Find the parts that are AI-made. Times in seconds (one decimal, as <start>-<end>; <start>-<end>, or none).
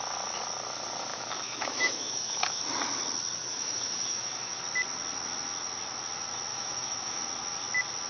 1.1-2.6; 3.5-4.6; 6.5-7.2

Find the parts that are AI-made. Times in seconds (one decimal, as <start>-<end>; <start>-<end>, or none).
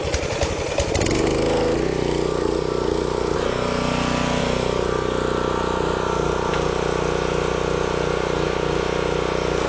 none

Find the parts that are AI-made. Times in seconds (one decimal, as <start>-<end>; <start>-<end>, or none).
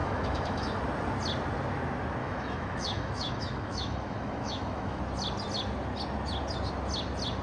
0.0-0.8; 2.2-5.0